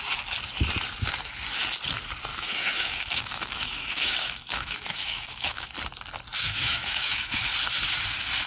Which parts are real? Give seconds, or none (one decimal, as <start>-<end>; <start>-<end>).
0.0-2.3; 5.7-6.3; 7.4-8.5